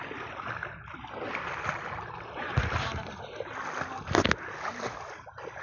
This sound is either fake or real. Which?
real